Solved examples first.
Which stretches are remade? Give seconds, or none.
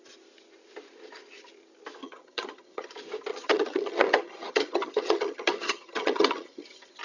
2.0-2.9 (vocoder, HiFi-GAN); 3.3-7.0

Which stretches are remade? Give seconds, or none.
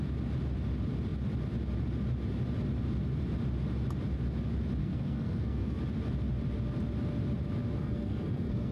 4.8-5.8 (codec, SNAC); 7.8-8.7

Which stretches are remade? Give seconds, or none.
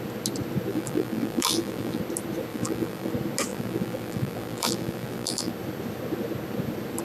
0.7-2.0 (vocoder, BigVGAN v2); 2.5-3.1; 3.5-5.5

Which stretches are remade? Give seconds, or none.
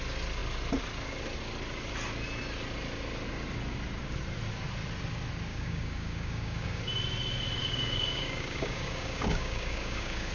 5.5-6.8 (codec, DAC); 7.6-10.3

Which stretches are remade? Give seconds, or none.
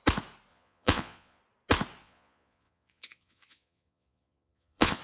0.5-1.4 (vocoder, Vocos); 2.0-5.0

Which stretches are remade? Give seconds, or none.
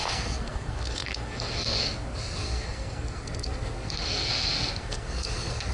0.0-5.7 (codec, SNAC)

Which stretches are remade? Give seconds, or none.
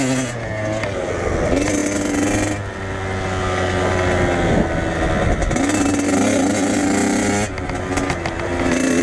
none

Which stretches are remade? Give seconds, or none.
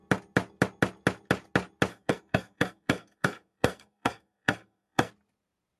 1.9-5.1 (codec, SNAC)